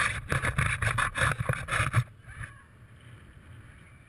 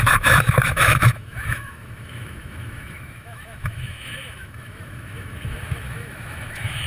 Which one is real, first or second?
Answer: first